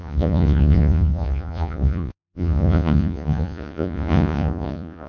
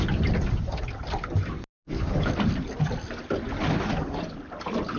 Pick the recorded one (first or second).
second